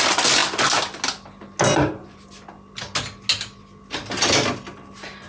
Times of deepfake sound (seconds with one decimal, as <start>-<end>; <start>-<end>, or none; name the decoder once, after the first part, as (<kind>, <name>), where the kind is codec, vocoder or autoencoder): none